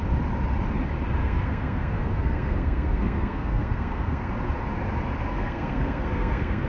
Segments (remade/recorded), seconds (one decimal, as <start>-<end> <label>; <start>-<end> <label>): 0.0-1.2 recorded; 1.2-4.3 remade; 4.3-5.3 recorded; 5.3-6.7 remade